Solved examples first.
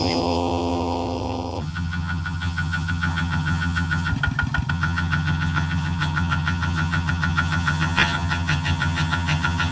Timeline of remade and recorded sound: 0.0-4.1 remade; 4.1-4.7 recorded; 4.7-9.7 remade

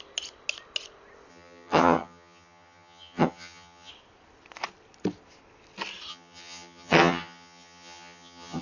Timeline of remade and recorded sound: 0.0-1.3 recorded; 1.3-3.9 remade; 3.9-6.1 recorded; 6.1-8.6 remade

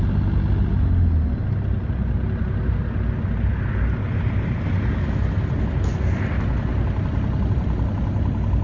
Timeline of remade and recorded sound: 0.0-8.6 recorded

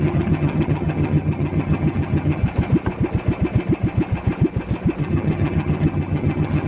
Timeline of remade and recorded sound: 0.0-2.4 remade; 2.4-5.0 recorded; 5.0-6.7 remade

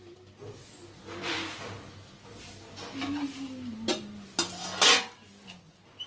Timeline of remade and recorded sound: 0.0-6.1 recorded

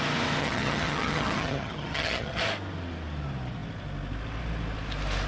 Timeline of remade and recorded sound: 0.0-0.4 recorded; 0.4-2.4 remade; 2.4-5.3 recorded

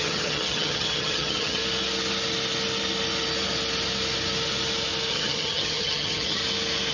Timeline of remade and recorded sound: 0.0-1.6 remade; 1.6-5.1 recorded; 5.1-6.4 remade; 6.4-6.9 recorded

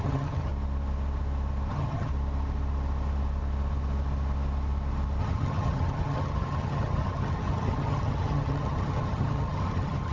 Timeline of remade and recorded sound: 0.0-0.5 remade; 0.5-1.7 recorded; 1.7-2.1 remade; 2.1-5.2 recorded; 5.2-10.1 remade